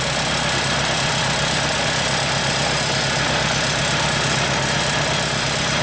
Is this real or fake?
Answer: real